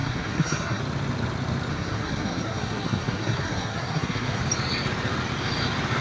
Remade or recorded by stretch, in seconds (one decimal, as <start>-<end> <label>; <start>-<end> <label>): 0.0-0.8 remade; 0.8-1.7 recorded; 1.7-4.4 remade; 4.4-6.0 recorded